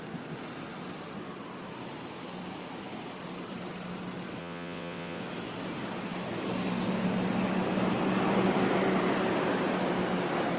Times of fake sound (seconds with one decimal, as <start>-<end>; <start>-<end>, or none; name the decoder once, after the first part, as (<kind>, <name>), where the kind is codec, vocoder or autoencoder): 4.4-5.2 (vocoder, WaveNeXt)